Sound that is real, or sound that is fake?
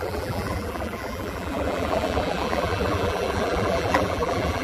fake